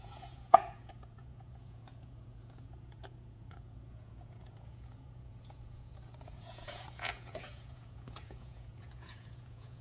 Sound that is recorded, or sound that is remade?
remade